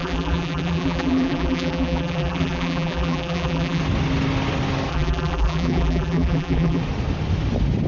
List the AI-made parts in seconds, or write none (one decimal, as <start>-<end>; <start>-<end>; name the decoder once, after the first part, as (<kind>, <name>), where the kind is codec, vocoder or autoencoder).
0.0-3.8 (vocoder, BigVGAN v2); 4.9-6.8

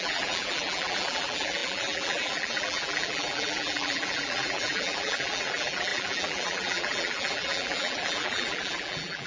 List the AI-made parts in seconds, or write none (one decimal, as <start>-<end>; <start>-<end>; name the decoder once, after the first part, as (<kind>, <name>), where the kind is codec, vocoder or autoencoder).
0.0-9.3 (vocoder, BigVGAN v2)

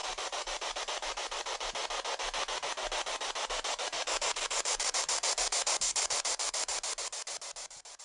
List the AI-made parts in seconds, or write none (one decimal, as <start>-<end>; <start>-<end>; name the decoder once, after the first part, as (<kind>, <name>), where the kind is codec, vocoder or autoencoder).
0.0-1.8 (vocoder, BigVGAN v2); 3.8-6.7

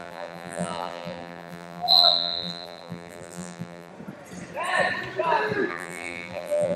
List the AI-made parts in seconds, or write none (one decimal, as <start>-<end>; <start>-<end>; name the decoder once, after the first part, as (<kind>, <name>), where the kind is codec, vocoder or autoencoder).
0.0-3.9 (vocoder, BigVGAN v2); 5.7-6.8

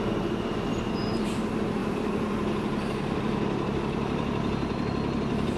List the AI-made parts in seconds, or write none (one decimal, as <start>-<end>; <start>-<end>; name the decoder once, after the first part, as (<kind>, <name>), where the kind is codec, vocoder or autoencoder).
0.7-1.2 (vocoder, BigVGAN v2); 1.8-5.6

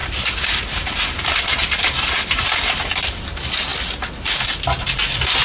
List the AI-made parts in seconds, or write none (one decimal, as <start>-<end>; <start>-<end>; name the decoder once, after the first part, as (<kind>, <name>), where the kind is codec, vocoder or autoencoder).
none

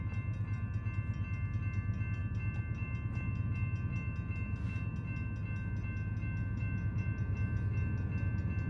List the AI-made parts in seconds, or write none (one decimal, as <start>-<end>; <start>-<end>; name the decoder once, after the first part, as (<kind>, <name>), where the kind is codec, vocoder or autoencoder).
none

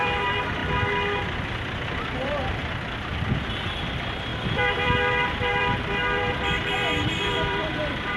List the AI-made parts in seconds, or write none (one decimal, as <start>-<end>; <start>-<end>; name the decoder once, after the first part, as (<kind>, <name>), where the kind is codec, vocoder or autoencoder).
0.0-0.6 (vocoder, BigVGAN v2); 2.0-2.6; 3.4-8.2